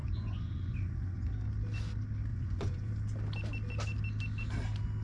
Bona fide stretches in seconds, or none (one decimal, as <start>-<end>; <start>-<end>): 1.3-2.3; 2.9-5.0